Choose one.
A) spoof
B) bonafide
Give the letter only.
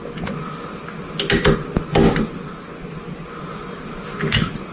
B